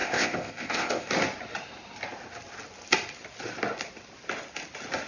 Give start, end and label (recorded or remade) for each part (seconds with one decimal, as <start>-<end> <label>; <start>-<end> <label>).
0.0-1.1 remade; 1.1-5.1 recorded